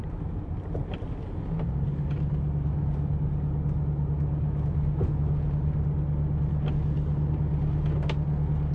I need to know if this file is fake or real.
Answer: real